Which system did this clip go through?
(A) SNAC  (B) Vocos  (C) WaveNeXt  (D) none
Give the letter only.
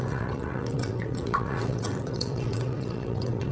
C